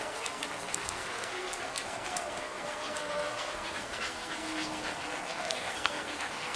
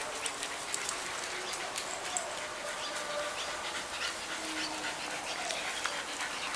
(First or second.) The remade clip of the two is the first